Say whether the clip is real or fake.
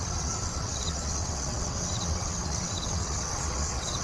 fake